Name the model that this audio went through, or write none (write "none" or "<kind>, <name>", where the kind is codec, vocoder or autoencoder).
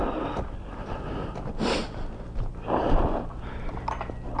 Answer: none